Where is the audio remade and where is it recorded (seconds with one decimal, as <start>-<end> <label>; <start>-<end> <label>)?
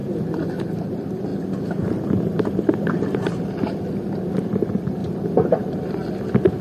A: 0.0-0.8 recorded; 0.8-1.3 remade; 1.3-4.2 recorded; 4.2-5.0 remade; 5.0-6.6 recorded